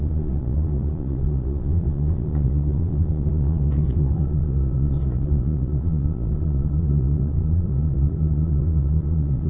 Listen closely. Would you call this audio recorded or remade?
remade